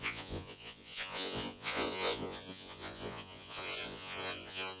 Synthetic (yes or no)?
yes